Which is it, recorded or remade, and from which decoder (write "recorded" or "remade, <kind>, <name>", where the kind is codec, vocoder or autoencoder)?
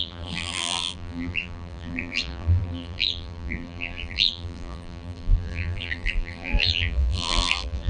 remade, vocoder, BigVGAN v2